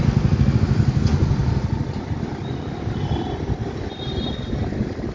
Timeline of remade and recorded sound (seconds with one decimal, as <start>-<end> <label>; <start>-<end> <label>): 0.0-5.1 recorded